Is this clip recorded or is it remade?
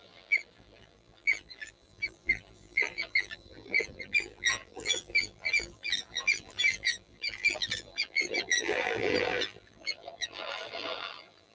remade